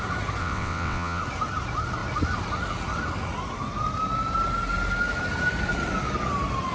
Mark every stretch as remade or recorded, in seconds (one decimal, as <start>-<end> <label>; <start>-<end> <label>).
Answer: 0.0-0.4 recorded; 0.4-1.2 remade; 1.2-6.7 recorded